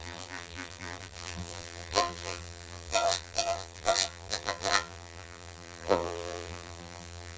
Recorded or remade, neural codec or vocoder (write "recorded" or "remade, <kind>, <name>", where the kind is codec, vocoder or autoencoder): remade, vocoder, BigVGAN v2